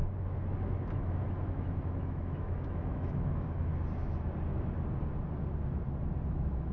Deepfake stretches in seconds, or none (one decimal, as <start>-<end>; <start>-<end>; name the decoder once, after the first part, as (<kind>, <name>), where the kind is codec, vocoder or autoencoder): 0.9-3.7 (autoencoder, DAC-VAE); 6.3-6.7